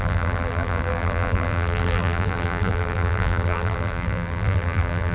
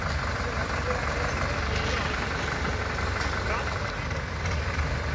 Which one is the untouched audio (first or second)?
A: second